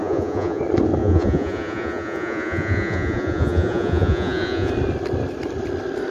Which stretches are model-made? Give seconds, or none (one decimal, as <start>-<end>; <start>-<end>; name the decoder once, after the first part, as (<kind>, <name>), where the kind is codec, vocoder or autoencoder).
0.0-0.6 (vocoder, Vocos); 1.0-4.7